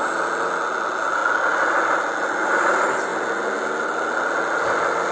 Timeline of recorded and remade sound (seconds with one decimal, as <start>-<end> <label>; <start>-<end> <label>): 0.0-5.1 recorded